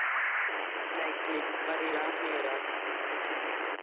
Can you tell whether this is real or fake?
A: fake